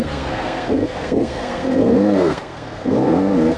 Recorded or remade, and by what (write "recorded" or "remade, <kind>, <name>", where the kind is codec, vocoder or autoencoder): remade, codec, SNAC